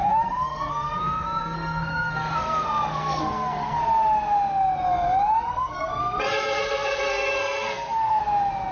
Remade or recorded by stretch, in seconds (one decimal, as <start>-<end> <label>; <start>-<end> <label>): 0.0-3.8 remade; 3.8-5.5 recorded; 5.5-8.2 remade; 8.2-8.7 recorded